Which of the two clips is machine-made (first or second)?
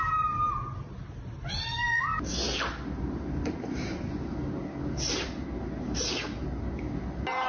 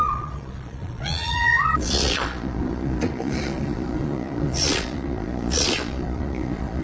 second